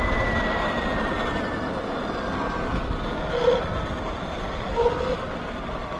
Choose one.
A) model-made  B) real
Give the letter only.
B